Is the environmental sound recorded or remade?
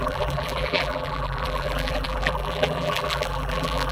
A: remade